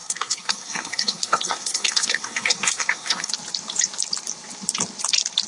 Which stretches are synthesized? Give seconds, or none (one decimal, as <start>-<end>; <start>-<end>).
0.0-3.3